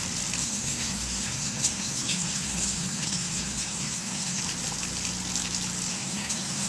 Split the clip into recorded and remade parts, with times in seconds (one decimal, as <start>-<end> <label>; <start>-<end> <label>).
0.0-0.4 recorded; 0.4-4.4 remade; 4.4-5.9 recorded; 5.9-6.7 remade